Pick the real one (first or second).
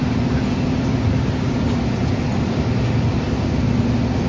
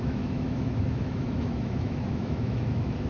first